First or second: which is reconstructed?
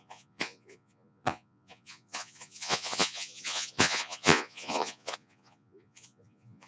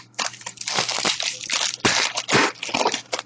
first